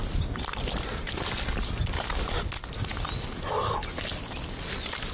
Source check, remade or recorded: recorded